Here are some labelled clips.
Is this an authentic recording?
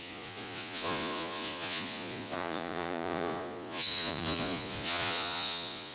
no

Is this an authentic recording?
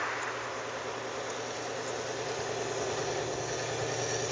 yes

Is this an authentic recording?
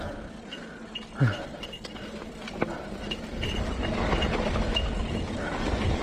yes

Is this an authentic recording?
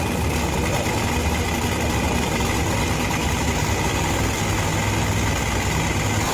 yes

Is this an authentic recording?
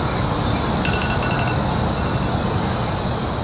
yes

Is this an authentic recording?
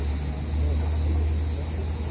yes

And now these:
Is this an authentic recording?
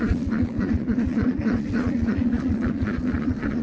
no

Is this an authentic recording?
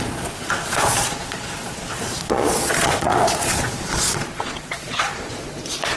no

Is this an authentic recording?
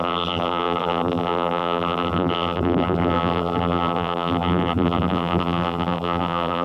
no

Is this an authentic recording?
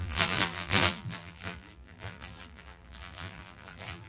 no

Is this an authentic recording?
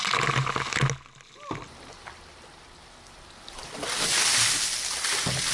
yes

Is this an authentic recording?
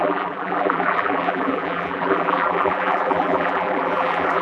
no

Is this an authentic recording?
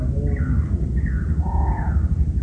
yes